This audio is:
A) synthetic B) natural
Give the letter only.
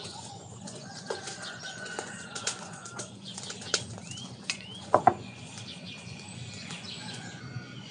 A